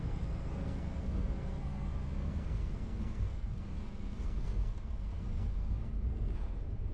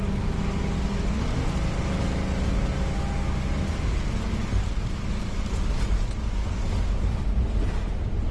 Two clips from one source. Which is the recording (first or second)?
second